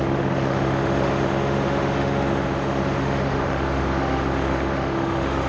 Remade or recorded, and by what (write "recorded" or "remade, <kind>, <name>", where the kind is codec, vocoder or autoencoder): remade, autoencoder, DAC-VAE